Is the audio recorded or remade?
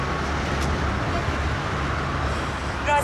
recorded